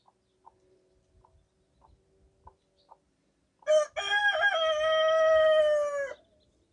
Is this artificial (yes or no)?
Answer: no